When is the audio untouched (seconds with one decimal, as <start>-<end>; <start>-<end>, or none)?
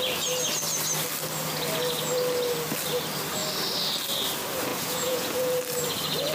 0.0-4.7; 5.6-6.3